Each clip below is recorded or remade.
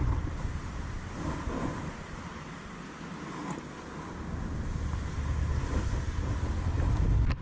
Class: recorded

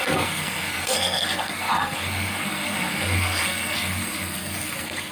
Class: remade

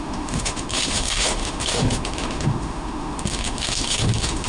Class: remade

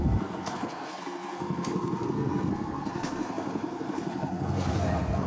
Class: remade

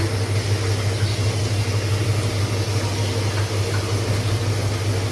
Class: recorded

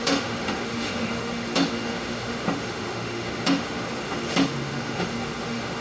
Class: remade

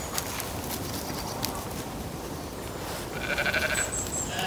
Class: recorded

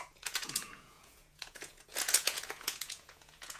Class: remade